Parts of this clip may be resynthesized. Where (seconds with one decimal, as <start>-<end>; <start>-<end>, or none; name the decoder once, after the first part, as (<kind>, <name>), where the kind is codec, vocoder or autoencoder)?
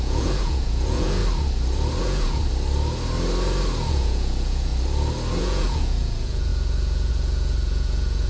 0.0-1.2 (vocoder, Vocos); 2.0-2.4; 3.9-4.7; 5.4-8.3